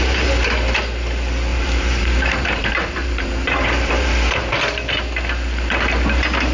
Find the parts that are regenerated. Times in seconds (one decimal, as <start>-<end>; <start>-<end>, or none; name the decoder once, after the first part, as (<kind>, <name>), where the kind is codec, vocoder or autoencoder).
1.5-4.5 (vocoder, BigVGAN v2)